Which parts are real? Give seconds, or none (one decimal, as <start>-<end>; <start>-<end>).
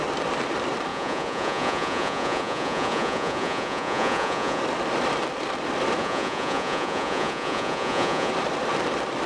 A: 0.0-0.9; 4.6-6.0; 8.3-9.3